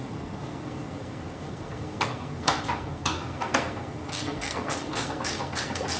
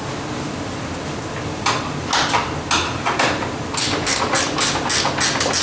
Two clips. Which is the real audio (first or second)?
second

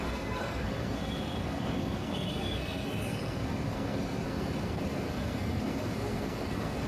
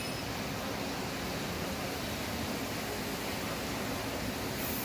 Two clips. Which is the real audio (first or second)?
second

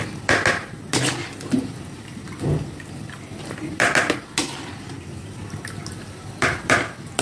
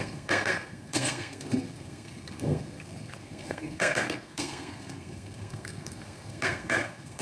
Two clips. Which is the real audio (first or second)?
first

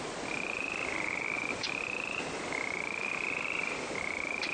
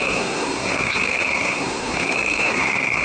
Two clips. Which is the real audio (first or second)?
first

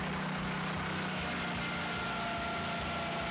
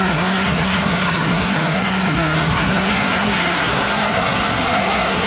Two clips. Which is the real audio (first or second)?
first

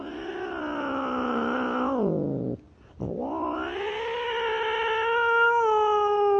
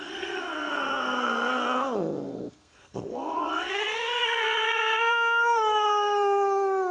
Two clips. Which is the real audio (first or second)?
first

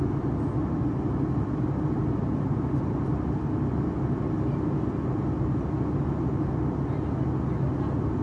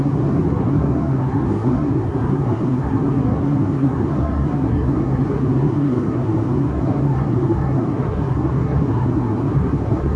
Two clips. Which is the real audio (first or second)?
first